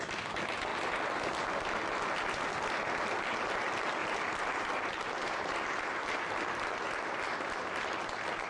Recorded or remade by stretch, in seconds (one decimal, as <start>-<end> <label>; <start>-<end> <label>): 0.0-4.0 recorded; 4.0-6.6 remade; 6.6-8.5 recorded